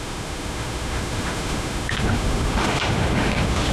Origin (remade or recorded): remade